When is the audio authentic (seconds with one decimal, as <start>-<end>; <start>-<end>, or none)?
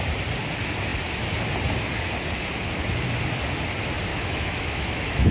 0.0-4.1